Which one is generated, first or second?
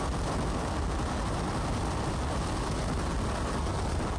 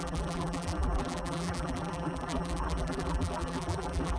second